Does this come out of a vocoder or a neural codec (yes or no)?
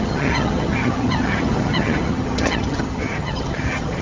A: yes